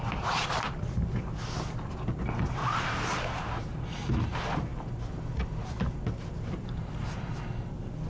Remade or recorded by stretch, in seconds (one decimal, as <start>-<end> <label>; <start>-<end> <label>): 0.0-2.6 recorded; 2.6-4.2 remade; 4.2-8.1 recorded